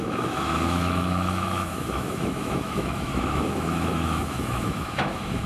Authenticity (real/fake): fake